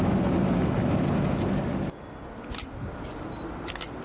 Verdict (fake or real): real